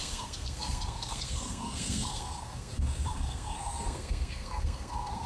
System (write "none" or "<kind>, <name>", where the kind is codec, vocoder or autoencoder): codec, SNAC